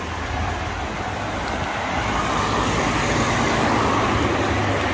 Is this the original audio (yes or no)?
yes